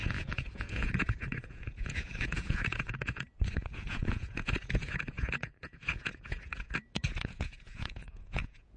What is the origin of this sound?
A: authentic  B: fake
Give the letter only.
B